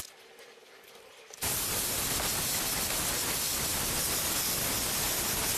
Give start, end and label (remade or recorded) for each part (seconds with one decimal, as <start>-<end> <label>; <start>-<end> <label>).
0.0-0.6 recorded; 0.6-2.4 remade; 2.4-3.7 recorded; 3.7-4.6 remade; 4.6-5.6 recorded